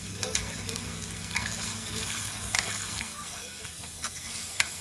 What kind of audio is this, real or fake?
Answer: fake